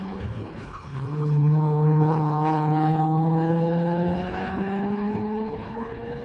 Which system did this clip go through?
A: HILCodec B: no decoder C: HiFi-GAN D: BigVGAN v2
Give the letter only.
A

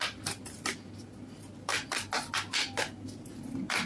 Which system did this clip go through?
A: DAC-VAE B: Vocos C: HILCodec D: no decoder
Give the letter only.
D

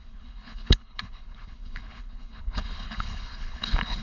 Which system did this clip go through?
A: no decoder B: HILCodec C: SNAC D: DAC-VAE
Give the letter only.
B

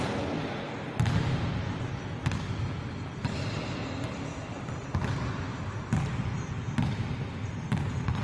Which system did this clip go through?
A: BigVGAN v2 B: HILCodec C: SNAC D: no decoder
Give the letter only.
D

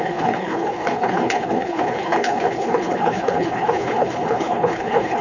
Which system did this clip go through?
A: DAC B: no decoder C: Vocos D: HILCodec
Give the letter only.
D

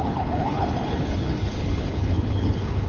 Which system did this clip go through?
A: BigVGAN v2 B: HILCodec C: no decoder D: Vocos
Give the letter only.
B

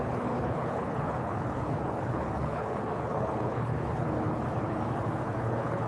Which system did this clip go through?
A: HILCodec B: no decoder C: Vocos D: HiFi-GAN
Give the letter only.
A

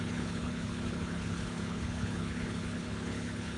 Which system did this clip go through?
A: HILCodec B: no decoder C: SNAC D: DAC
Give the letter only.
A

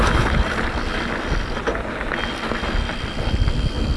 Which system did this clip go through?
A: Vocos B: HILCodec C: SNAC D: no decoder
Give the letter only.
D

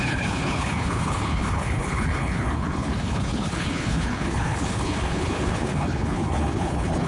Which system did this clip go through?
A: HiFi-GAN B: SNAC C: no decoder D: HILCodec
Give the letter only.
D